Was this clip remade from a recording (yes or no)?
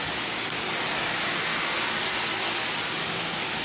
no